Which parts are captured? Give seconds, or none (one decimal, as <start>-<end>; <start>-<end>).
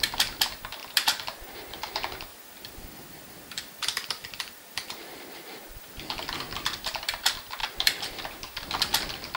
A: 0.0-0.8; 1.5-2.3; 6.4-7.6; 8.2-9.4